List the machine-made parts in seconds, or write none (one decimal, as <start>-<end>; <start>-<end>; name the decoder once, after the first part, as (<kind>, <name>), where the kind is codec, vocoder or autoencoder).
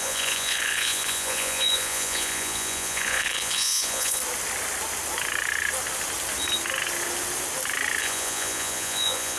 0.0-4.2 (vocoder, Vocos); 8.0-9.4